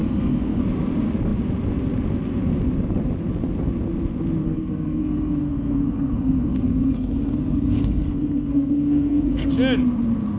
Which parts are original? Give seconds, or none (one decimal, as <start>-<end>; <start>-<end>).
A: 0.6-4.4; 9.5-10.4